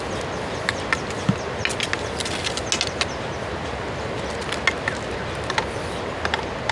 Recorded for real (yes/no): yes